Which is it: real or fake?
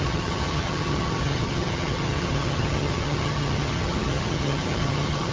fake